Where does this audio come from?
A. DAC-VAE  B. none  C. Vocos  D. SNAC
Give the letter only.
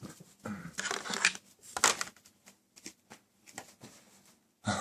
B